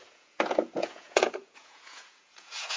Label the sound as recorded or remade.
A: remade